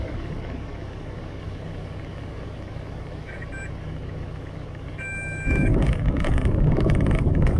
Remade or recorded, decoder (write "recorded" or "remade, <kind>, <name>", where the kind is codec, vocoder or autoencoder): remade, codec, DAC